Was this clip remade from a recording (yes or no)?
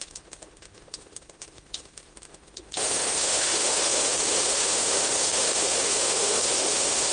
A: yes